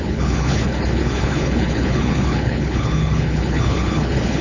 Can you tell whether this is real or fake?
fake